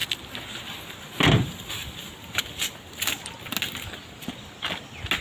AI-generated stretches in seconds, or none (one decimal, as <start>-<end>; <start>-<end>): none